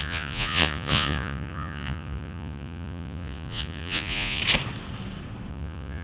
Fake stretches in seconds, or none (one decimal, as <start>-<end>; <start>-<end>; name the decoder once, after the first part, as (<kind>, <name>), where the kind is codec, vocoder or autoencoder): 0.0-4.4 (vocoder, Vocos); 5.5-6.0

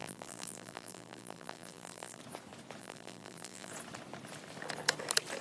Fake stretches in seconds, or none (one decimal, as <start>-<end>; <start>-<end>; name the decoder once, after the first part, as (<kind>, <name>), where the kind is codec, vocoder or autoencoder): 0.0-2.2 (vocoder, BigVGAN v2); 2.8-3.7